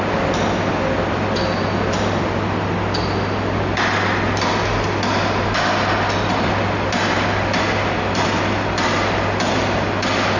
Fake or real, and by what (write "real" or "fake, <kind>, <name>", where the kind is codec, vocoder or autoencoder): fake, vocoder, BigVGAN v2